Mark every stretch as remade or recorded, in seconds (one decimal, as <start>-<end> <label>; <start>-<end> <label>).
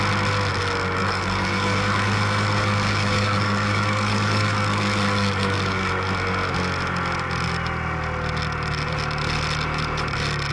0.0-1.0 recorded; 1.0-5.9 remade; 5.9-10.5 recorded